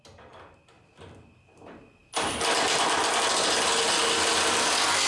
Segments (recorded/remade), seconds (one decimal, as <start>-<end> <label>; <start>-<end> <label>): 0.0-5.1 recorded